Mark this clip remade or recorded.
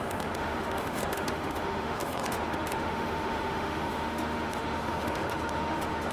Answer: remade